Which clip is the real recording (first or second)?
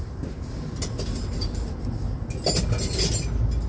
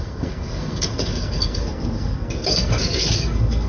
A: first